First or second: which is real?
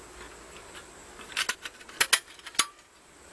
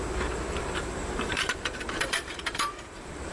first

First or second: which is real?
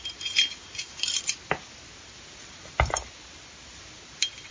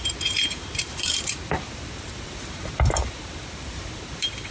first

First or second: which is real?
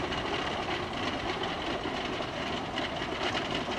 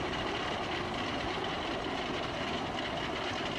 second